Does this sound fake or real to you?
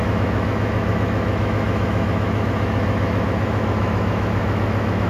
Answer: fake